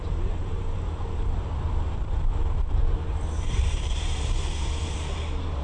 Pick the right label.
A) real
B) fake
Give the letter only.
B